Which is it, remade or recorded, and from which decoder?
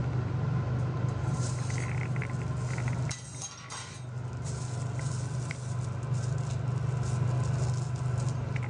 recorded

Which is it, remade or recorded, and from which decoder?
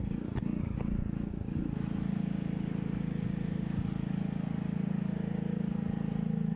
recorded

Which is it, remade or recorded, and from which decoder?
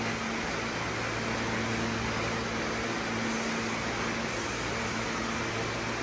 recorded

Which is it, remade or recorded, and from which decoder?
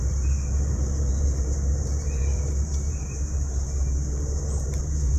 remade, vocoder, BigVGAN v2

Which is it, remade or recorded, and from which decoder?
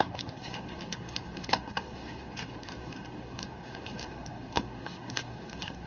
remade, codec, SNAC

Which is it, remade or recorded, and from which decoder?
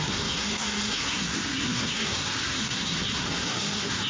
remade, codec, SNAC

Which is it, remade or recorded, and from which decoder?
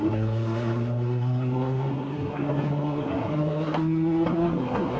remade, codec, SNAC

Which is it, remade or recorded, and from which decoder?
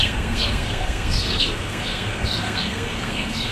remade, codec, SNAC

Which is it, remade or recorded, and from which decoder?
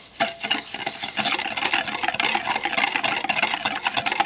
recorded